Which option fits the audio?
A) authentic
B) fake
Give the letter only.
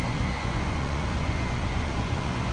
B